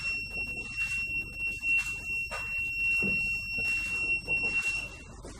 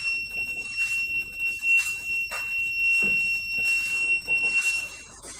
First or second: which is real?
first